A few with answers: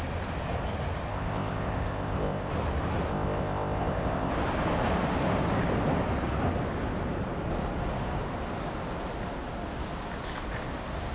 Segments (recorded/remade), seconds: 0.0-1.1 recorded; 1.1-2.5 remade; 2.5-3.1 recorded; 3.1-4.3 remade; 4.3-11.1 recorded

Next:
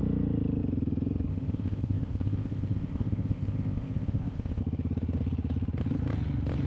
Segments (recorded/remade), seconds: 0.0-1.3 recorded; 1.3-4.6 remade; 4.6-6.7 recorded

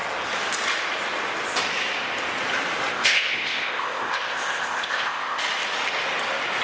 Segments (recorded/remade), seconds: 0.0-2.9 recorded; 2.9-5.4 remade; 5.4-6.6 recorded

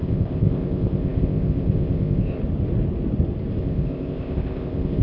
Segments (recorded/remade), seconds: 0.0-2.4 remade; 2.4-3.6 recorded; 3.6-5.0 remade